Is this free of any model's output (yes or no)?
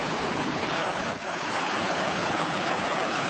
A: no